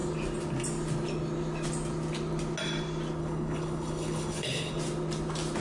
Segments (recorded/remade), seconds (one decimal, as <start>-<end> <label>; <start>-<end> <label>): 0.0-3.2 recorded; 3.2-4.8 remade; 4.8-5.6 recorded